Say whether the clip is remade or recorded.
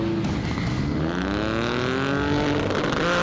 recorded